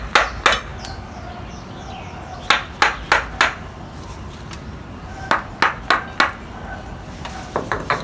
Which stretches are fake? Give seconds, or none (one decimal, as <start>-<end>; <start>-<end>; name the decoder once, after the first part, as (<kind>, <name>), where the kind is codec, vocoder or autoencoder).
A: none